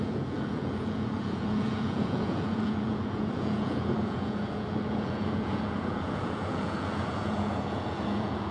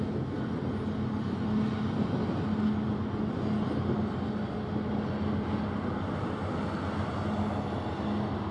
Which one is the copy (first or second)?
first